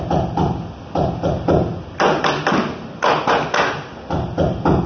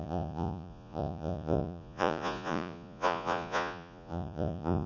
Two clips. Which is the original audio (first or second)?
first